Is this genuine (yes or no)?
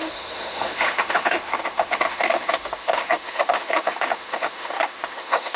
no